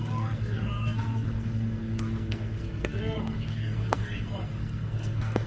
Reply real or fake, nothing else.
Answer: fake